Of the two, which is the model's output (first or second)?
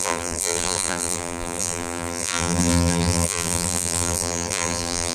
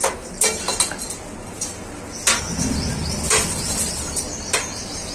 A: first